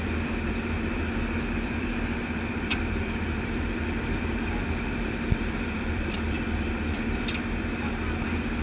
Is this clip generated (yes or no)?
yes